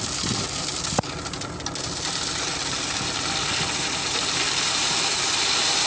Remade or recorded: recorded